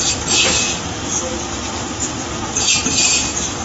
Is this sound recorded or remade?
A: recorded